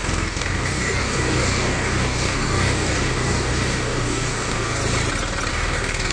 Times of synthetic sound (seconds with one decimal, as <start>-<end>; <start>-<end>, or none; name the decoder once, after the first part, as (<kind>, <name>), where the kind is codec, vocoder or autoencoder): 0.0-4.8 (codec, DAC); 5.5-6.1